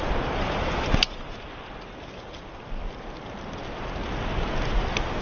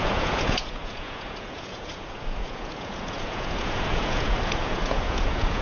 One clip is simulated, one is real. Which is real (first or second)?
first